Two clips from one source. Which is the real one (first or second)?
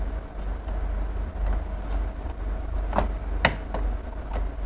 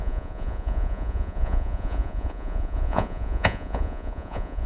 first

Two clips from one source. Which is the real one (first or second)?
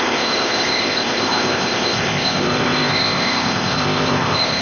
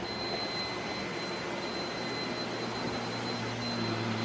second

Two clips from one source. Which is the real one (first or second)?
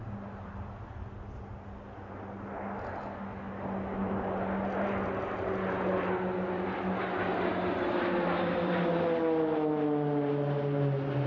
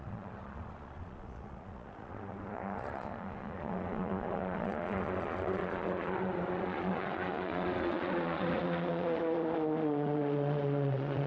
first